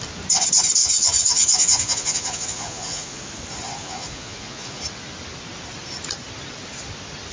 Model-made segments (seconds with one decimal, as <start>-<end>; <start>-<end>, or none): 0.8-3.2; 3.8-4.8